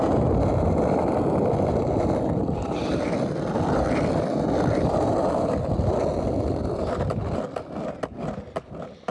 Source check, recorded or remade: recorded